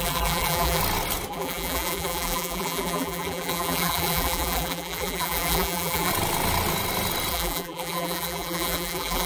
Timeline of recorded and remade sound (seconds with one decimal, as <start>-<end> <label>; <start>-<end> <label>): 0.0-0.8 remade; 0.8-1.3 recorded; 1.3-6.1 remade; 6.1-7.3 recorded; 7.3-9.3 remade